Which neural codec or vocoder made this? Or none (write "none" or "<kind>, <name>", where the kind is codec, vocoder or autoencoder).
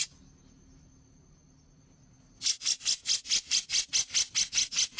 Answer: none